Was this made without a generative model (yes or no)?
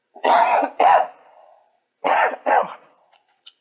no